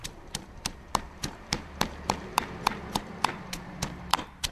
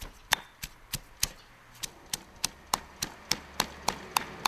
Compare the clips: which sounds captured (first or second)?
second